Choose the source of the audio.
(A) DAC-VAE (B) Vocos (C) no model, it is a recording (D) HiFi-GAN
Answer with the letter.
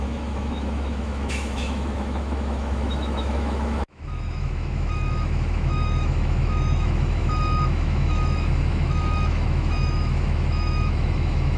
A